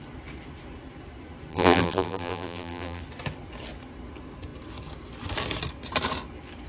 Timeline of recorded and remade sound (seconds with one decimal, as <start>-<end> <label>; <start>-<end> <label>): 0.0-1.5 recorded; 1.5-3.0 remade; 3.0-6.7 recorded